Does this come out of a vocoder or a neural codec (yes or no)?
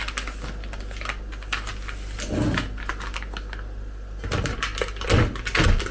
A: no